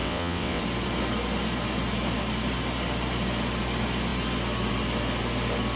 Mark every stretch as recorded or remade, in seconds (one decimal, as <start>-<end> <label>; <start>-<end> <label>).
0.0-0.6 remade; 0.6-5.8 recorded